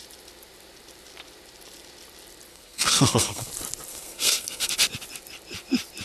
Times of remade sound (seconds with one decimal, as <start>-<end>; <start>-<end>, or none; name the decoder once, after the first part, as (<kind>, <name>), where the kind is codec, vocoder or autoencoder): 2.5-3.5 (codec, SNAC); 3.9-4.7